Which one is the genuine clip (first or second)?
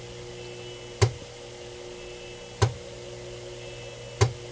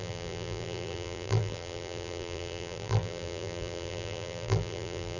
first